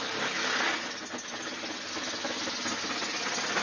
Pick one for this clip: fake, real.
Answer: real